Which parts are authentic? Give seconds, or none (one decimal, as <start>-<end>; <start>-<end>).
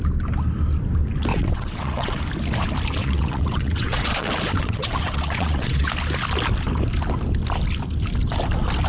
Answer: 0.0-1.3; 2.2-3.0; 5.9-8.9